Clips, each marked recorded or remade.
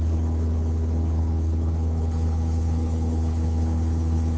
remade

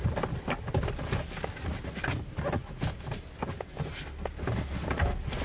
recorded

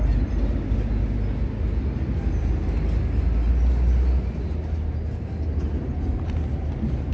recorded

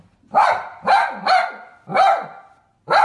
recorded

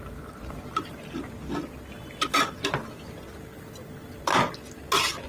recorded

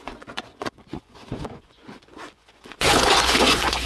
remade